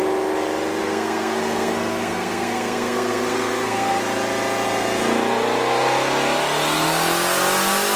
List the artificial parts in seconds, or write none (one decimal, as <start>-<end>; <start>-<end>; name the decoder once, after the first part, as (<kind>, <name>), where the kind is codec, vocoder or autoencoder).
0.8-4.0 (codec, SNAC)